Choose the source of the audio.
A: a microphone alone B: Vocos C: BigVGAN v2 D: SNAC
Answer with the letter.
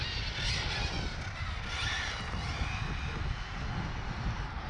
A